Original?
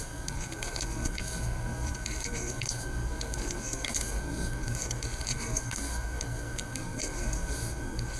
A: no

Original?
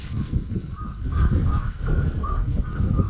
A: no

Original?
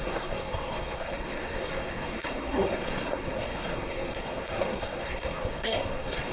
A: no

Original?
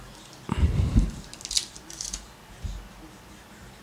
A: yes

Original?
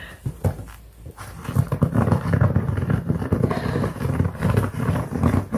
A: yes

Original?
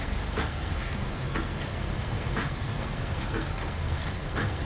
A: no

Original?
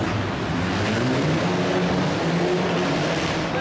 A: yes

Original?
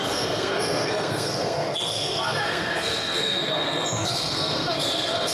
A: no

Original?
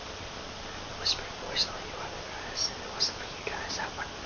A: yes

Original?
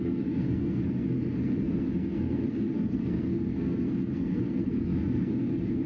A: no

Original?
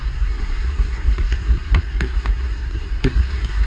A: no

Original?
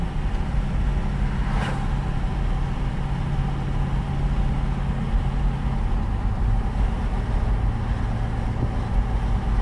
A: yes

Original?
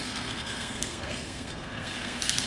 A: no